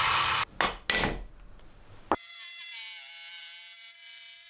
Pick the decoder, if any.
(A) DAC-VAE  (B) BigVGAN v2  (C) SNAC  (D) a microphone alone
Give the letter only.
D